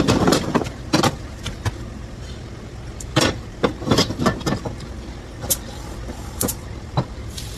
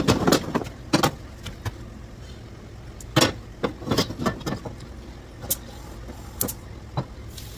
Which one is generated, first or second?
first